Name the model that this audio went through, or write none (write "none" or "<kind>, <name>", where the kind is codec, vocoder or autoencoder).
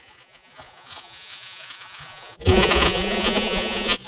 vocoder, Vocos